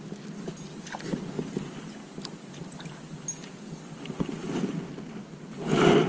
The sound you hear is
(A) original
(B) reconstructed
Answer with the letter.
A